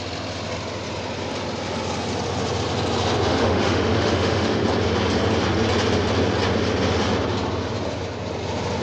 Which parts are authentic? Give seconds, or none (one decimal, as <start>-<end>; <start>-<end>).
0.0-3.3; 4.6-8.8